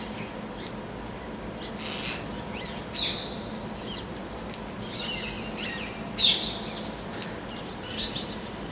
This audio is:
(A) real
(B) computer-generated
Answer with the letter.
A